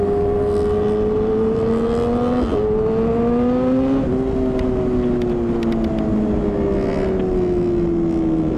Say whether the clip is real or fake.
real